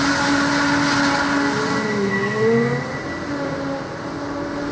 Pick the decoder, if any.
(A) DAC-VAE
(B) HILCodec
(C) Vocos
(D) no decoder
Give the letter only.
D